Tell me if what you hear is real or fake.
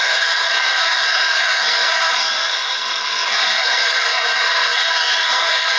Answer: fake